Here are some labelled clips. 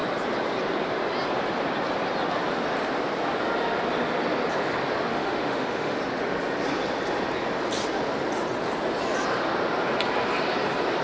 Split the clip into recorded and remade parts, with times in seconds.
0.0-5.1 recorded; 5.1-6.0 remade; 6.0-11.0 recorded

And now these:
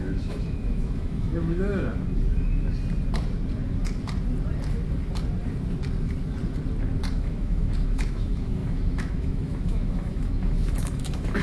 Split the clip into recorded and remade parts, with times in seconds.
0.0-1.9 remade; 1.9-7.1 recorded; 7.1-11.4 remade

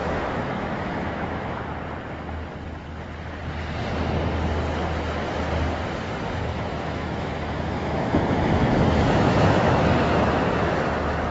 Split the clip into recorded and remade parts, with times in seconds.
0.0-1.6 remade; 1.6-6.5 recorded; 6.5-9.8 remade; 9.8-11.3 recorded

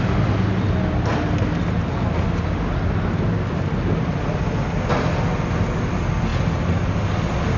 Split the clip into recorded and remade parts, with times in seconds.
0.0-7.6 recorded

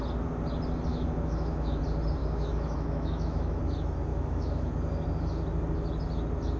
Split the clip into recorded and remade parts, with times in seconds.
0.0-0.9 recorded; 0.9-1.8 remade; 1.8-2.2 recorded; 2.2-3.6 remade; 3.6-4.1 recorded; 4.1-4.7 remade; 4.7-6.6 recorded

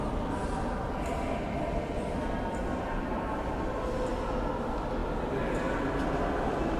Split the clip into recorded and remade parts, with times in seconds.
0.0-6.8 recorded

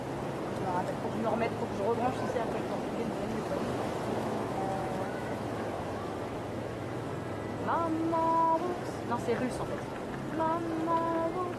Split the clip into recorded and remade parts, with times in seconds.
0.0-3.7 recorded; 3.7-7.1 remade; 7.1-11.6 recorded